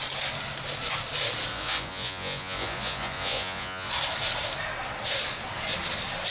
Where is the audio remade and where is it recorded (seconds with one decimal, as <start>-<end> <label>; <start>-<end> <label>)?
0.0-1.5 recorded; 1.5-3.9 remade; 3.9-6.3 recorded